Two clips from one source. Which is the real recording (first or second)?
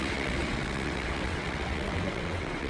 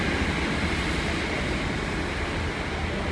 second